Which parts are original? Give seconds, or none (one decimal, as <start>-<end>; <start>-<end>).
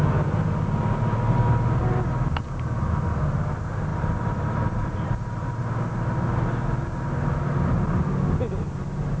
0.0-3.9; 5.6-9.2